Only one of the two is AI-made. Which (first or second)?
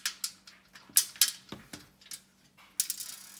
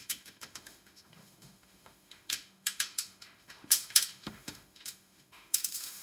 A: second